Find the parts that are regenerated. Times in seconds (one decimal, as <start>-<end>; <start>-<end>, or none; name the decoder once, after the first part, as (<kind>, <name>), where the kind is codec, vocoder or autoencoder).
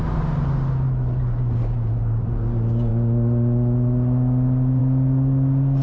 none